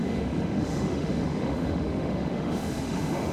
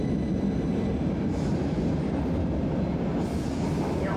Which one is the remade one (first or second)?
first